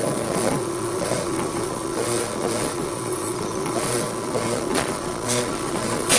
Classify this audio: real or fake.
fake